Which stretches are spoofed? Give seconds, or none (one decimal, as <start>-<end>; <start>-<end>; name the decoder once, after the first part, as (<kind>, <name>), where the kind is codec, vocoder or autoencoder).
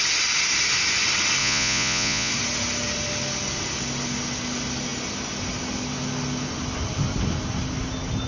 1.4-2.3 (vocoder, Vocos)